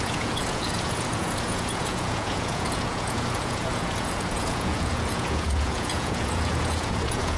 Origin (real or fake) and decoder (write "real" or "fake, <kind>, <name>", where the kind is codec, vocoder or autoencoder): fake, vocoder, Vocos